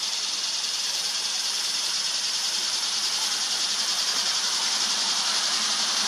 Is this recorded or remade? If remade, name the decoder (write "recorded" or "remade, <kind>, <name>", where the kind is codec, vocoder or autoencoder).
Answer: remade, vocoder, BigVGAN v2